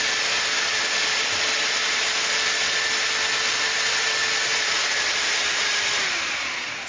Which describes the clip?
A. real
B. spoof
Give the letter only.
A